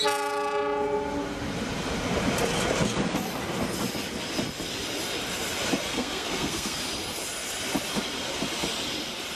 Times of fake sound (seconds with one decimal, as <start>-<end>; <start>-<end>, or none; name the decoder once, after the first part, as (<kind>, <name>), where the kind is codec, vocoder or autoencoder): 5.9-6.8 (codec, SNAC)